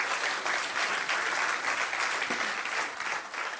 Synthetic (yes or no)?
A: no